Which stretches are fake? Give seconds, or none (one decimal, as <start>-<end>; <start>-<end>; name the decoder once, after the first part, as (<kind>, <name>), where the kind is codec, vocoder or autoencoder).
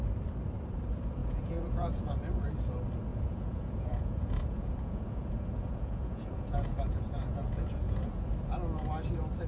1.2-2.1 (vocoder, Vocos); 3.1-8.2